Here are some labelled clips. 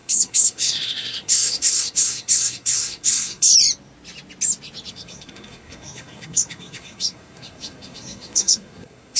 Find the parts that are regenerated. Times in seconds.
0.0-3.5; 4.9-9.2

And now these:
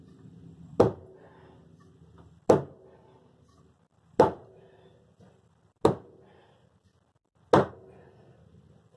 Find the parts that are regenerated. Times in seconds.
none

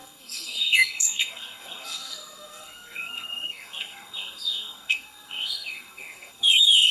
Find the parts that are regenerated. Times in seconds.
0.0-6.9

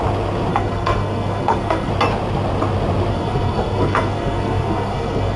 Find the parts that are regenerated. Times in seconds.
0.5-1.9; 3.1-5.4